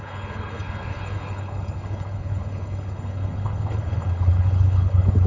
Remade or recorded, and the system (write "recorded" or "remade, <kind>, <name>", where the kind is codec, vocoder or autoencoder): remade, codec, HILCodec